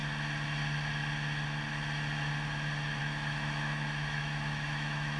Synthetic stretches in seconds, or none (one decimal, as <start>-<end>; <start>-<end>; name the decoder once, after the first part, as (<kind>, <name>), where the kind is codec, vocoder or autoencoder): 3.0-5.2 (autoencoder, DAC-VAE)